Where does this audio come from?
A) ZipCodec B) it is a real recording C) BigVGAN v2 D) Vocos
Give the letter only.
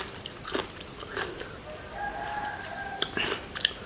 C